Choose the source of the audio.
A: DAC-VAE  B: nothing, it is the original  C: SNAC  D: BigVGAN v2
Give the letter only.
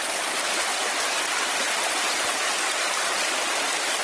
B